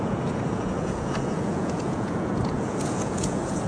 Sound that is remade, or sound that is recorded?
remade